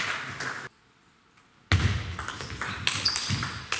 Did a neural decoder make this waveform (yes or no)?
no